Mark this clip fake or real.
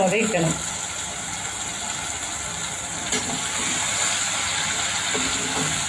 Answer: fake